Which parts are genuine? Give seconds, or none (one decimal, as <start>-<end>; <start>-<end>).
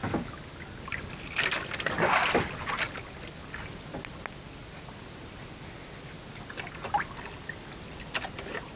0.0-8.8